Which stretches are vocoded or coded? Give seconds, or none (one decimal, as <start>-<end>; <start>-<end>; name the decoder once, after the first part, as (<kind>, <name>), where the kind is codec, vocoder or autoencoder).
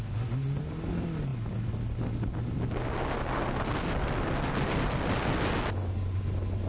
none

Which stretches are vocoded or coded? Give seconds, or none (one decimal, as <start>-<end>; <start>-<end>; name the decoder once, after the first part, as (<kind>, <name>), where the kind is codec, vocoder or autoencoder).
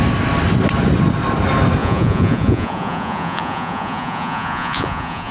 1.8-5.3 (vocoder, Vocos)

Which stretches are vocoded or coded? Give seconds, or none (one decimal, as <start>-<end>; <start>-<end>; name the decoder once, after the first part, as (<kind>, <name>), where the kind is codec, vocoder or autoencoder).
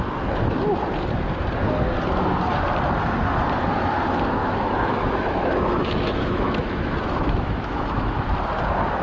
4.4-8.3 (autoencoder, DAC-VAE)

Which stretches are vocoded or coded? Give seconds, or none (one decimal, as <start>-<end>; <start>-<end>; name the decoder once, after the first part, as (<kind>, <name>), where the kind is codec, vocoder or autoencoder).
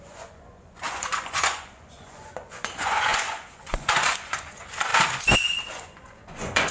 0.0-4.9 (vocoder, Vocos); 5.7-6.7